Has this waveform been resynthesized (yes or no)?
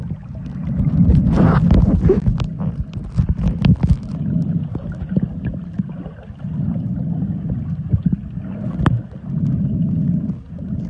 no